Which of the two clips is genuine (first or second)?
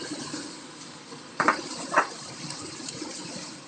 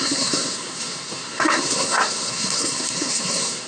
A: first